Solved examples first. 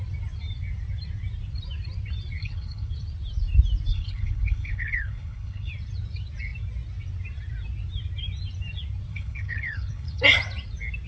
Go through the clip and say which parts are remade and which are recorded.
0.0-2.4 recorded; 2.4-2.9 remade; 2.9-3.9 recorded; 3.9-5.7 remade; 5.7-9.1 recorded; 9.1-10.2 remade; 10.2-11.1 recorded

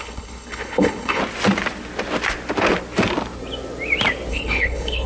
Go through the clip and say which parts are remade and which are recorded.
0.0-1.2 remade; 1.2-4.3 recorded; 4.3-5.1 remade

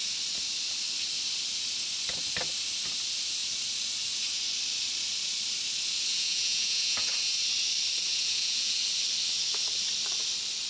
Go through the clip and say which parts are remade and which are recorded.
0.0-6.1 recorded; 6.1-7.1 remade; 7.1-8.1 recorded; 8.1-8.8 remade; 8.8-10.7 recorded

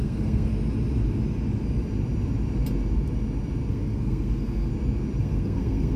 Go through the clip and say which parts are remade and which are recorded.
0.0-0.5 remade; 0.5-3.7 recorded; 3.7-4.7 remade; 4.7-5.2 recorded; 5.2-6.0 remade

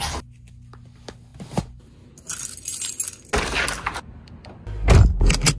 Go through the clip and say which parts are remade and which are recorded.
0.0-5.6 recorded

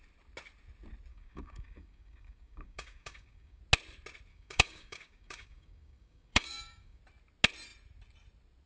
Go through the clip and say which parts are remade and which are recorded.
0.0-1.1 recorded; 1.1-3.6 remade; 3.6-4.3 recorded; 4.3-7.0 remade; 7.0-8.7 recorded

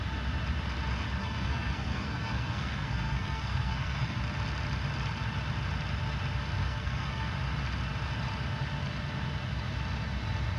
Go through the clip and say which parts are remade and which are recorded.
0.0-1.2 recorded; 1.2-4.2 remade; 4.2-6.6 recorded; 6.6-7.3 remade; 7.3-10.6 recorded